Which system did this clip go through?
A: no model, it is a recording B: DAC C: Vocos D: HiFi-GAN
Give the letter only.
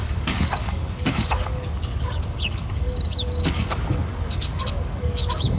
B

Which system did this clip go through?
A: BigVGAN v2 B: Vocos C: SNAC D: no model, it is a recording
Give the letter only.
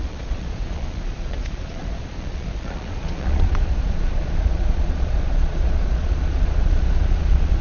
B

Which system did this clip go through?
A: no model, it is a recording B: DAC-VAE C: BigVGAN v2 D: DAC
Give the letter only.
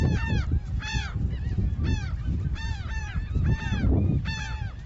C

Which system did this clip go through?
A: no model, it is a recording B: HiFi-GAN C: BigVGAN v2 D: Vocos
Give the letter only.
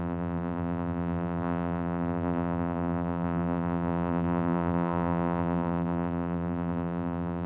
C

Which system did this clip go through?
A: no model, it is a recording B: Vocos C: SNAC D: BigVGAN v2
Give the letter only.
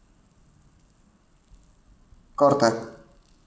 A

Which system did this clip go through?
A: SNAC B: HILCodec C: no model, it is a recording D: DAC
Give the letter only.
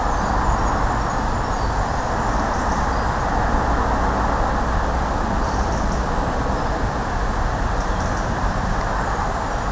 C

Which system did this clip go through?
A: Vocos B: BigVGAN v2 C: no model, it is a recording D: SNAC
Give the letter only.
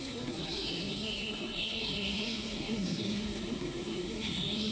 D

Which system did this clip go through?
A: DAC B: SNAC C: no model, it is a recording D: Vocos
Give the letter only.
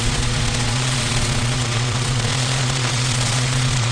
D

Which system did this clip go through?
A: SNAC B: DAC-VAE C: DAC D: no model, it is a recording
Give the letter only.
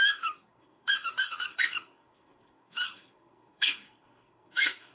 A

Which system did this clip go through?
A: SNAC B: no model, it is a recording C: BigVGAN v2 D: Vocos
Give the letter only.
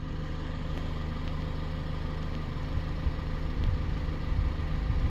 B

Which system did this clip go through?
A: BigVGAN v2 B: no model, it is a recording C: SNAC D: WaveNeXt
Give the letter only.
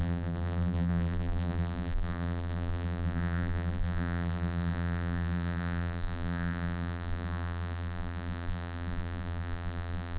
A